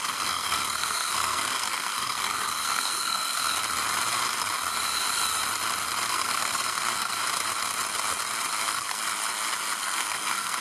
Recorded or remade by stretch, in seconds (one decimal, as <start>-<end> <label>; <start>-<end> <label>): 0.0-3.5 remade; 3.5-6.1 recorded; 6.1-7.2 remade; 7.2-8.6 recorded; 8.6-9.0 remade; 9.0-9.8 recorded; 9.8-10.6 remade